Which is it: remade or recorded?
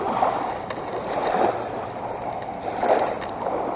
recorded